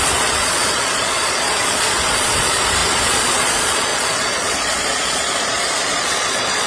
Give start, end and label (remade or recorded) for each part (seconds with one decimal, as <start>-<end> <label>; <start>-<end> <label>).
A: 0.0-6.7 remade